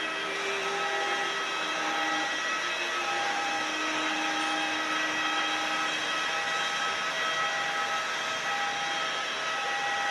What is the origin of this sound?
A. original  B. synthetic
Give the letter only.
A